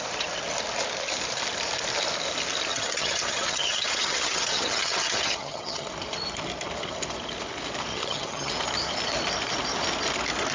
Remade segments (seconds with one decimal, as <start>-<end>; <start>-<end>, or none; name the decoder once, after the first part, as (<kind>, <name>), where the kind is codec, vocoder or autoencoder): 2.7-5.9 (vocoder, HiFi-GAN); 7.9-8.5